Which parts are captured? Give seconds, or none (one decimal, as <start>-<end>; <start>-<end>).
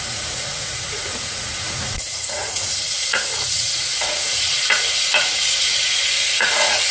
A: none